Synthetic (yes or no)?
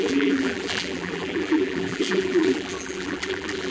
yes